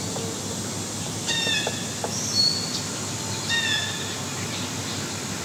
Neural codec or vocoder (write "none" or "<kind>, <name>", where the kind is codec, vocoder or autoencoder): none